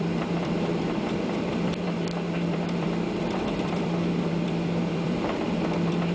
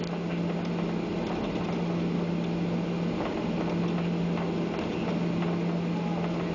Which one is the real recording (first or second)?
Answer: second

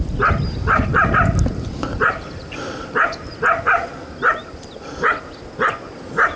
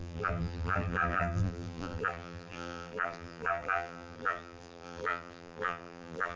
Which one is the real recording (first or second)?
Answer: first